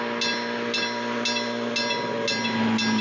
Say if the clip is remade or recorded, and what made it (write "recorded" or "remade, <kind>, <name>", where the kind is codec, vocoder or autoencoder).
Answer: recorded